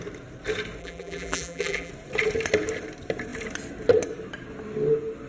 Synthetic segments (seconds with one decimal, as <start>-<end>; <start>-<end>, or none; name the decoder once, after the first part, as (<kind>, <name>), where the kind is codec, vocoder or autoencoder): 0.8-1.9 (vocoder, BigVGAN v2)